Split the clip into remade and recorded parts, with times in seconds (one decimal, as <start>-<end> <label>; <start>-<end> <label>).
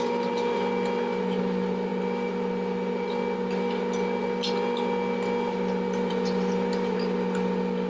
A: 0.0-7.9 recorded